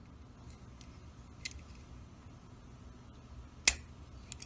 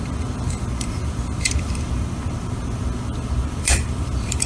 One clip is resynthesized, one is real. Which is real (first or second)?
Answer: first